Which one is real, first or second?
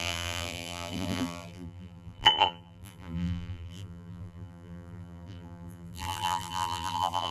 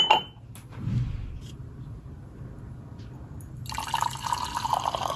second